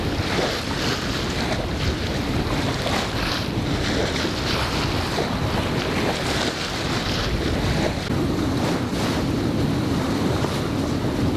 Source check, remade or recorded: recorded